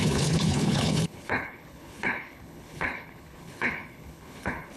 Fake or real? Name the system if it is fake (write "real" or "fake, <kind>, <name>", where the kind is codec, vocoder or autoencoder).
fake, codec, HILCodec